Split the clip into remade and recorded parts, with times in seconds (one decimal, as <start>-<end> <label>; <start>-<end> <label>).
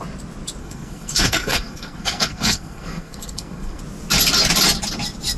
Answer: 0.0-0.6 recorded; 0.6-3.8 remade; 3.8-5.4 recorded